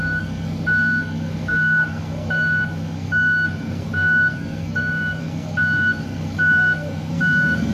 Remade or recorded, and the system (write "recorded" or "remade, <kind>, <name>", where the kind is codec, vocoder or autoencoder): remade, codec, SNAC